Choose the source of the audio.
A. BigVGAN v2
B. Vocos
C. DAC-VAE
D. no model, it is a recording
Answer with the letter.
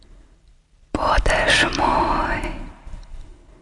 A